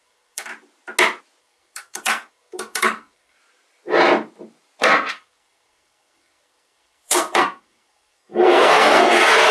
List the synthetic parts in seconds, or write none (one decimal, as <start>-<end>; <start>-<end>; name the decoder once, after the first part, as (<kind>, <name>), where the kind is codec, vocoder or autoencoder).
0.0-0.5 (codec, SNAC); 1.4-3.4; 4.8-9.5